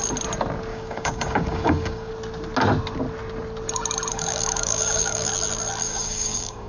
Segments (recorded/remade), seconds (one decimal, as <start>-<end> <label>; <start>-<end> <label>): 0.0-0.7 recorded; 0.7-2.1 remade; 2.1-4.1 recorded; 4.1-5.3 remade; 5.3-5.8 recorded; 5.8-6.7 remade